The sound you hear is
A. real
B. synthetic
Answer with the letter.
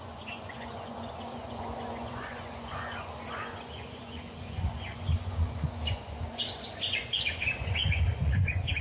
B